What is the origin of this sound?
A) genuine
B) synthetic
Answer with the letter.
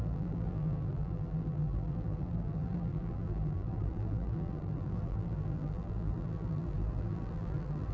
B